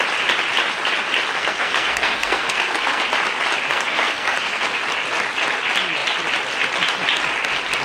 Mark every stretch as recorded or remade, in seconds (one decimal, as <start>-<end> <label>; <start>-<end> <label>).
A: 0.0-1.3 recorded; 1.3-3.0 remade; 3.0-3.7 recorded; 3.7-4.8 remade; 4.8-7.8 recorded